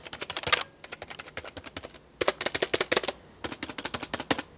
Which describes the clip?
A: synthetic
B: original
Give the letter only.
B